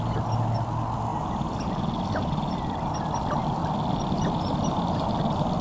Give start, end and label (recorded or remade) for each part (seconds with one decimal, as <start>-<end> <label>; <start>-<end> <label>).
0.0-5.6 recorded